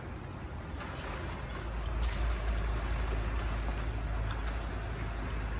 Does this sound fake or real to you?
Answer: real